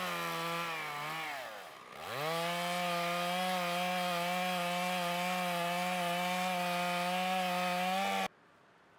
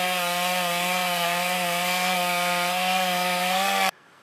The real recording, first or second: first